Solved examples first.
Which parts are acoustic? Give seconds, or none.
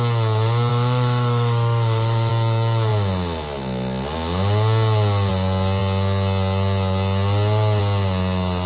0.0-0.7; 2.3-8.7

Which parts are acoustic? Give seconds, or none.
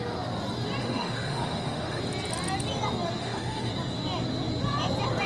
0.0-0.8; 2.0-3.2; 3.7-5.3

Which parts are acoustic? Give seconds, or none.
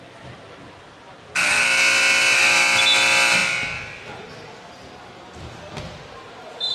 0.0-6.7